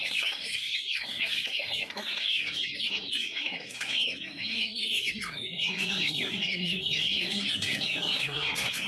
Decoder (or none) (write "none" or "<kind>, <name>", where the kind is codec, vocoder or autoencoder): codec, SNAC